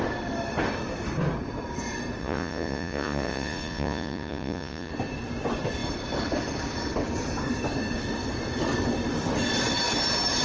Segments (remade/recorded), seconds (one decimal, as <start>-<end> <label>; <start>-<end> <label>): 0.0-2.2 recorded; 2.2-4.9 remade; 4.9-10.4 recorded